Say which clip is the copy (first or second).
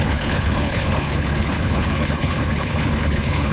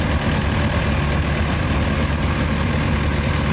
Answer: first